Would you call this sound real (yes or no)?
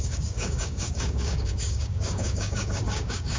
no